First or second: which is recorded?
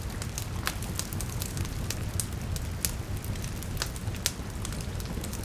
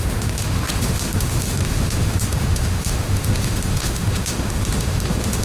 first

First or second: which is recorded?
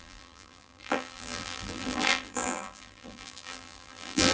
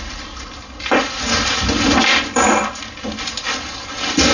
second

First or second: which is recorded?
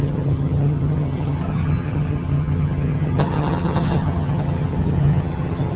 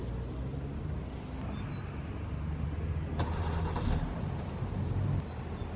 second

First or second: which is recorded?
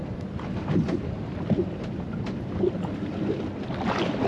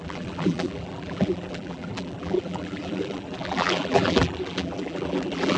first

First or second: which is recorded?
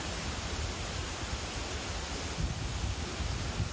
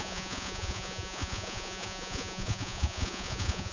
first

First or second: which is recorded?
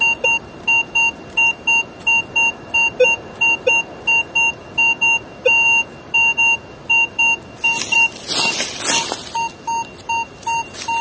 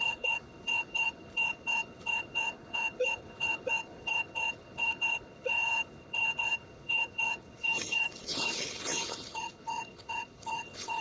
first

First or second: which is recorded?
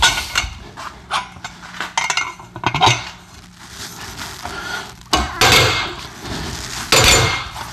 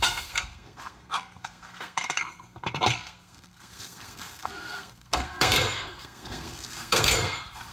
first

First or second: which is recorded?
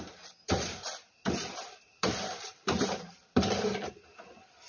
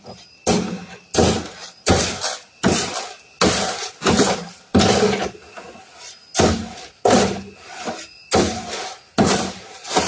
second